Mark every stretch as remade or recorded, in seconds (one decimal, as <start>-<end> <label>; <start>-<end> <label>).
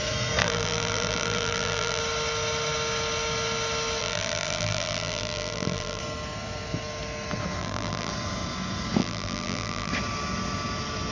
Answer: 0.0-0.4 recorded; 0.4-2.0 remade; 2.0-4.0 recorded; 4.0-6.0 remade; 6.0-7.6 recorded; 7.6-8.1 remade; 8.1-9.0 recorded; 9.0-9.9 remade; 9.9-11.1 recorded